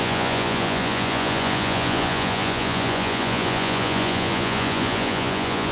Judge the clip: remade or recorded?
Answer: remade